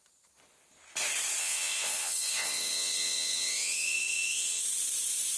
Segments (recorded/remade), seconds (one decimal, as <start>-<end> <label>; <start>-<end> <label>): 0.0-1.4 recorded; 1.4-4.6 remade; 4.6-5.4 recorded